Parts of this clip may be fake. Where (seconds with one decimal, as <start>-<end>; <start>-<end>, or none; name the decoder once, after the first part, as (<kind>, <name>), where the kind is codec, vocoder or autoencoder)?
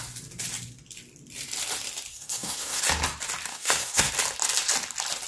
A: 2.1-2.8 (codec, SNAC); 3.5-4.1